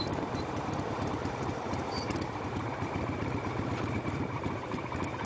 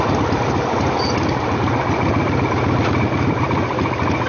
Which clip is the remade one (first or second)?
first